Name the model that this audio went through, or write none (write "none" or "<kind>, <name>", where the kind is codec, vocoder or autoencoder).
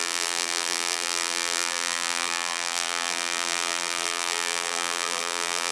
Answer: vocoder, BigVGAN v2